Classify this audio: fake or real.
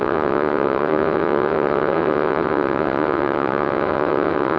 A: fake